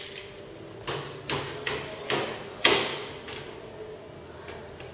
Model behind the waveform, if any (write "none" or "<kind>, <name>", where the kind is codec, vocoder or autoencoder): none